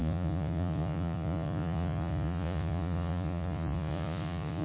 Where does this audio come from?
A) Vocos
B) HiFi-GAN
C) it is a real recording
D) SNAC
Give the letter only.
A